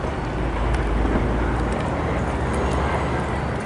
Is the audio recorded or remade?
recorded